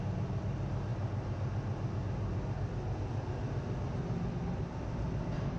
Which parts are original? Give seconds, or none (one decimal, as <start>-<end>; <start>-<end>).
0.0-5.6